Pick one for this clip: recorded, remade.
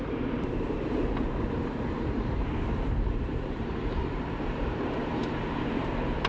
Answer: remade